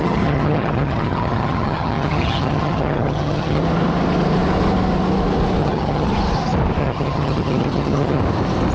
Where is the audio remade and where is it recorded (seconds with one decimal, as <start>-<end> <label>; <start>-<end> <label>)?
0.0-3.6 remade; 3.6-5.6 recorded; 5.6-6.1 remade; 6.1-6.8 recorded; 6.8-8.2 remade; 8.2-8.7 recorded